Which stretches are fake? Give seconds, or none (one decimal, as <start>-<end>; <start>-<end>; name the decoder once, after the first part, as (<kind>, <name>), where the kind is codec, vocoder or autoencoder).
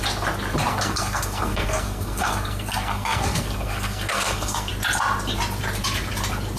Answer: 0.7-4.7 (codec, SNAC)